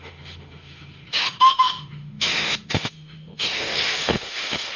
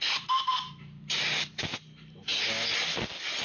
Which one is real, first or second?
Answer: second